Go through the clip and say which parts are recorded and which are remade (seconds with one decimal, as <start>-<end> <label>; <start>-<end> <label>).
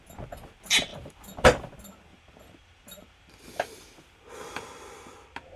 0.0-0.9 recorded; 0.9-1.7 remade; 1.7-2.1 recorded; 2.1-4.1 remade; 4.1-5.6 recorded